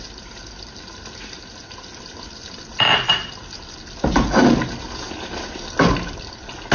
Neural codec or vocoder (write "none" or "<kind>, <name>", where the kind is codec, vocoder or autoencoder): none